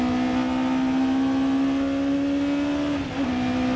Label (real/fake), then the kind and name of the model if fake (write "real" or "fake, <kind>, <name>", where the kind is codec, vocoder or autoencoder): real